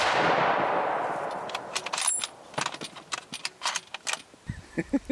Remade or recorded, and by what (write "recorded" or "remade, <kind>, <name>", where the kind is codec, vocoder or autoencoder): recorded